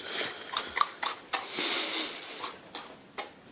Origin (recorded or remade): recorded